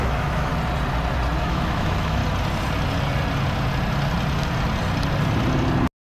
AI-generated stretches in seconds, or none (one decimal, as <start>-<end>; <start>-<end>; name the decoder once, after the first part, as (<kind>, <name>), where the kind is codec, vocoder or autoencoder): 0.0-0.5 (autoencoder, DAC-VAE); 1.4-2.2